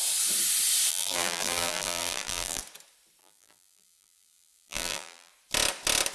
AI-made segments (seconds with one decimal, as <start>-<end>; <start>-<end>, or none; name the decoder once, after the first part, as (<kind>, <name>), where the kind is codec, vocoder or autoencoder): 0.9-2.6 (vocoder, BigVGAN v2); 3.2-5.3